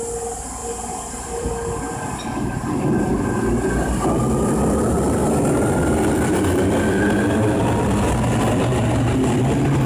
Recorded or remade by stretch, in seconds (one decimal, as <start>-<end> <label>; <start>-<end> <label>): 0.0-0.6 recorded; 0.6-1.5 remade; 1.5-5.2 recorded; 5.2-7.6 remade; 7.6-9.9 recorded